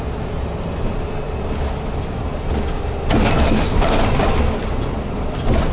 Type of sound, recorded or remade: recorded